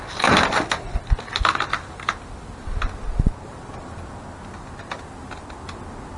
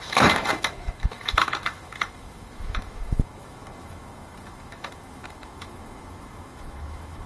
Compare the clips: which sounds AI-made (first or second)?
second